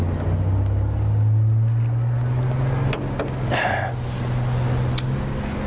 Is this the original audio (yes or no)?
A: yes